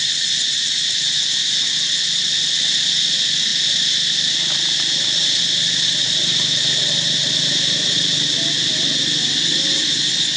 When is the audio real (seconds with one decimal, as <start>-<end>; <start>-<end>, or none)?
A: 0.0-10.4